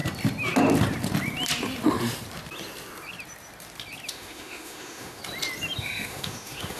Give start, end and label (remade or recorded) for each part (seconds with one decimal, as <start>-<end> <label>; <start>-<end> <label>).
0.0-4.1 recorded; 4.1-5.2 remade; 5.2-5.8 recorded; 5.8-6.8 remade